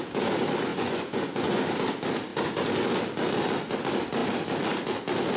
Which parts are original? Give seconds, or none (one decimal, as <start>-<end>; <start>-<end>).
0.0-0.7; 1.6-5.4